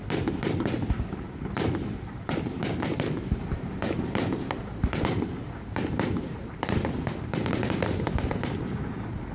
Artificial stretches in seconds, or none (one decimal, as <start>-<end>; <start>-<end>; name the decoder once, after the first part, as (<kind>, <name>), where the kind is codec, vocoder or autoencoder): 2.9-8.1 (vocoder, BigVGAN v2)

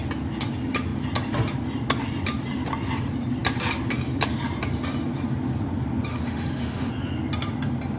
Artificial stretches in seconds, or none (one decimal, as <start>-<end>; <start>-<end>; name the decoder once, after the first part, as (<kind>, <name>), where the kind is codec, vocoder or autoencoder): 6.1-6.9 (autoencoder, DAC-VAE)